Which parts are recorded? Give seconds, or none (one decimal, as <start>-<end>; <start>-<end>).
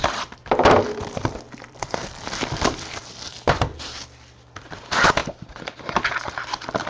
3.7-4.7; 5.2-5.8